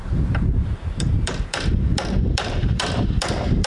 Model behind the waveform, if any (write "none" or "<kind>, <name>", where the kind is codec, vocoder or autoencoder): vocoder, BigVGAN v2